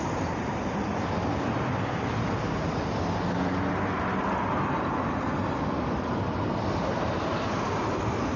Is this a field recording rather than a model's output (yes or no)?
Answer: yes